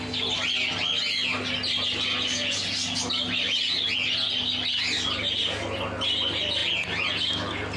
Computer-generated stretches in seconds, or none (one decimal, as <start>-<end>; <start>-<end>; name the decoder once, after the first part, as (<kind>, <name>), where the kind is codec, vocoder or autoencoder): none